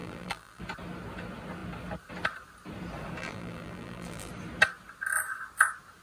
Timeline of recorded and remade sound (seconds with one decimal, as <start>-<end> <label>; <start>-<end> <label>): 0.0-0.6 remade; 0.6-3.2 recorded; 3.2-4.3 remade; 4.3-6.0 recorded